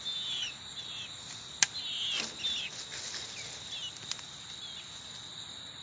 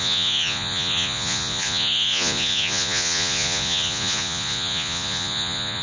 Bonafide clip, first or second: first